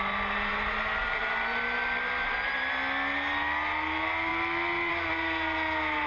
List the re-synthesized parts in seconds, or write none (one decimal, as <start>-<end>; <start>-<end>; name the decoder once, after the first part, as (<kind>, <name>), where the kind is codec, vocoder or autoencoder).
none